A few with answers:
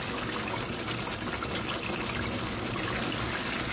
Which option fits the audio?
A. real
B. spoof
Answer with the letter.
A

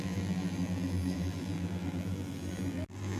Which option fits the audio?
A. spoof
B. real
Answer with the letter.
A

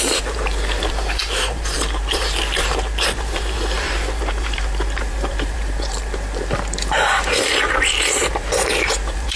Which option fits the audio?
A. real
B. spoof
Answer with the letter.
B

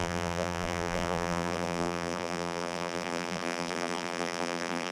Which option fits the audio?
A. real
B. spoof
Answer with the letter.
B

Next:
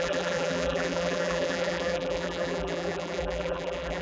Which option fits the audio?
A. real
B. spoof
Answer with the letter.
B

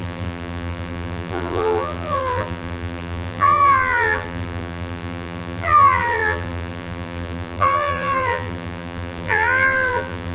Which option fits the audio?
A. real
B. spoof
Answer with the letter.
B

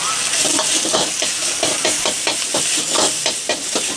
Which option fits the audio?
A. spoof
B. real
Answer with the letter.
B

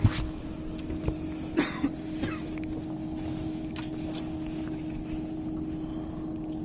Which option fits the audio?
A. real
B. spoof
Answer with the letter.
A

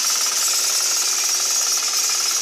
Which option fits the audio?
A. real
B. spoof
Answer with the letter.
A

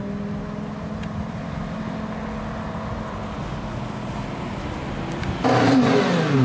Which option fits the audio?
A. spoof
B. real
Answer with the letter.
B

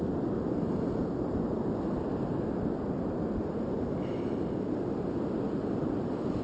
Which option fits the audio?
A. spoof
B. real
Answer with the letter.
A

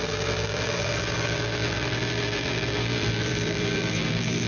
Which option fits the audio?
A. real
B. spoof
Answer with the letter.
B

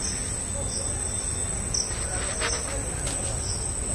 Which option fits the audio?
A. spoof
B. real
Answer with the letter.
B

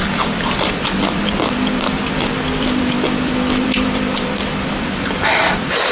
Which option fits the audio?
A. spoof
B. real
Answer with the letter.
A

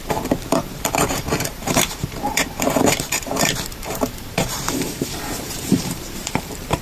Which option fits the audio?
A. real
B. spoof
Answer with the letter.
B